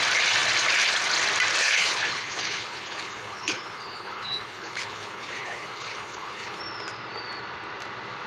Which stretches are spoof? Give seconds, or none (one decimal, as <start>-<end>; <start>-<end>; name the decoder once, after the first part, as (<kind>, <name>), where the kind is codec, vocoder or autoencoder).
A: 1.6-6.6 (codec, HILCodec)